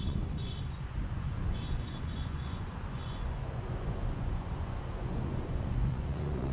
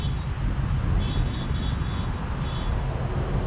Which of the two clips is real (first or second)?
second